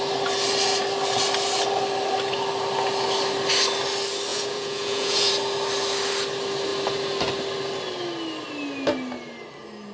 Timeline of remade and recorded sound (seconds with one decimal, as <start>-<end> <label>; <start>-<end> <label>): 0.0-4.3 recorded; 4.3-5.3 remade; 5.3-9.9 recorded